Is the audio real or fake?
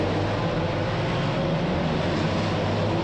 real